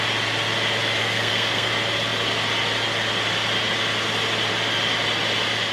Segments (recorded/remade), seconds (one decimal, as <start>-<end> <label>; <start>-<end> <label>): 0.0-1.0 recorded; 1.0-1.7 remade; 1.7-5.7 recorded